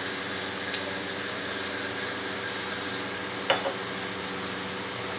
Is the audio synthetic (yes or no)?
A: no